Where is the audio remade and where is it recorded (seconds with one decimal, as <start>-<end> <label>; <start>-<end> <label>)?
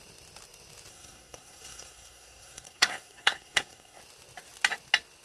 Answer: 0.0-0.9 recorded; 0.9-4.0 remade; 4.0-5.2 recorded